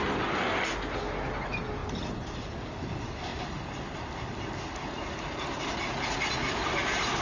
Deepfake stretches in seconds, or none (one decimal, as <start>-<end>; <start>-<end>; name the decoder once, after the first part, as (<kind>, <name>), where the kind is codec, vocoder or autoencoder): 6.4-7.2 (vocoder, BigVGAN v2)